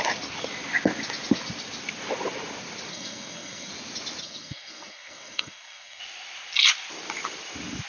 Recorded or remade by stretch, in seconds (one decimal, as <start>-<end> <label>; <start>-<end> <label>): 0.0-2.9 recorded; 2.9-3.7 remade; 3.7-4.2 recorded; 4.2-6.0 remade; 6.0-7.9 recorded